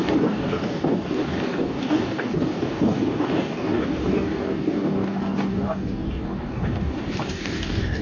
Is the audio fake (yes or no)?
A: yes